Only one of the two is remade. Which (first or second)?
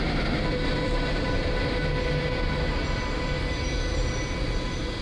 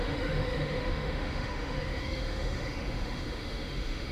second